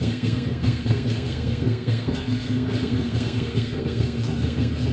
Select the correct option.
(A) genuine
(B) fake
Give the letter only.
B